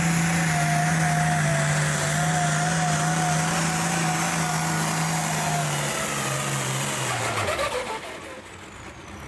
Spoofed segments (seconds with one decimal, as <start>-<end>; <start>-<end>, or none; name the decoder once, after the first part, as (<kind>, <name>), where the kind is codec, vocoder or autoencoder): none